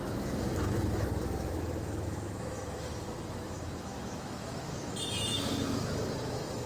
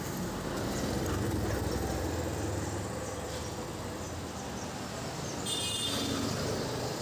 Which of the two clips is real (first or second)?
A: second